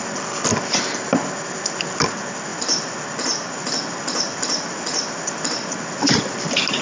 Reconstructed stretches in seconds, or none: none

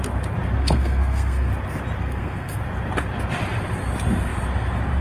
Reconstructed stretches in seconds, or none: 0.6-1.5 (codec, SNAC); 2.0-2.6

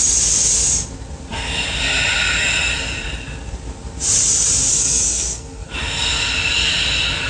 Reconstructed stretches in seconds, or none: 4.7-5.7 (codec, SNAC)

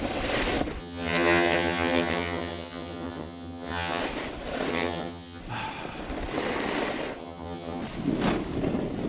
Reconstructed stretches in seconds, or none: 0.8-4.0 (vocoder, HiFi-GAN); 4.7-5.4; 7.2-7.8

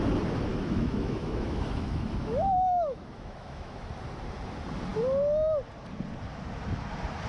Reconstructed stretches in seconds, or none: 0.5-3.9 (autoencoder, DAC-VAE)